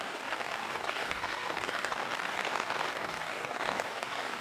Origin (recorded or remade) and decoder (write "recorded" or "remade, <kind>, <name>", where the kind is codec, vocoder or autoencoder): remade, codec, DAC